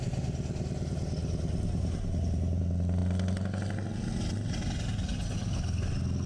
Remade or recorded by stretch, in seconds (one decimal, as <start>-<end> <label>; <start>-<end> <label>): 0.0-1.2 recorded; 1.2-2.6 remade; 2.6-6.3 recorded